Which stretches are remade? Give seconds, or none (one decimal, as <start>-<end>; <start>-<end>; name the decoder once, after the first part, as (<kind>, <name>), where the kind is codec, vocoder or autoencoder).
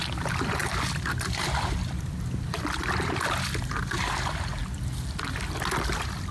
none